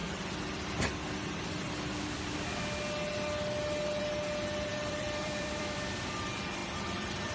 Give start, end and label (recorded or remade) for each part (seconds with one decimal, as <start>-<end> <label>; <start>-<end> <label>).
0.0-4.7 recorded; 4.7-6.0 remade; 6.0-6.6 recorded; 6.6-7.3 remade